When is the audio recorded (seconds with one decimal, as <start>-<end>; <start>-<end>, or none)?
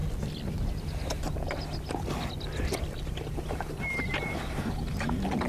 0.0-3.3